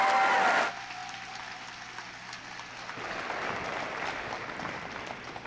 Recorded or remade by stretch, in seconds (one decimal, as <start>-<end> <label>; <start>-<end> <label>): 0.0-5.5 recorded